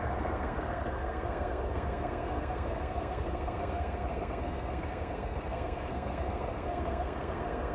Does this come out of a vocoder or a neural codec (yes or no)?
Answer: yes